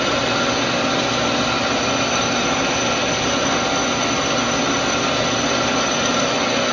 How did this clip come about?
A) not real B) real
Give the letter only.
B